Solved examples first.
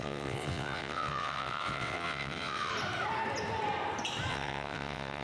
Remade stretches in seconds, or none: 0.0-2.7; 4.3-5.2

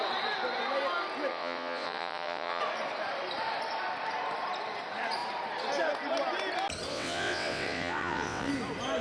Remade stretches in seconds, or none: 1.3-2.6; 6.9-8.5

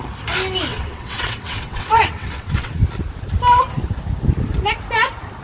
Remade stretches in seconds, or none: 0.7-2.8

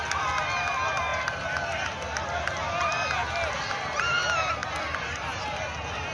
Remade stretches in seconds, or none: none

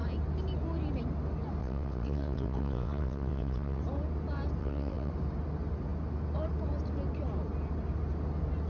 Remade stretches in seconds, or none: 1.6-3.8; 4.6-5.1

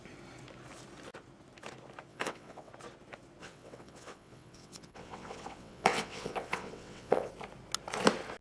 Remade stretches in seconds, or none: 2.1-2.7; 3.4-7.3